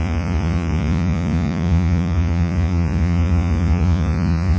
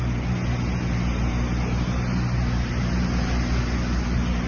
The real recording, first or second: second